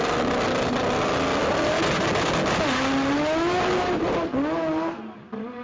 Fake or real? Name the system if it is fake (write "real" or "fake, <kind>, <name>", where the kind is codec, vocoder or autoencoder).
real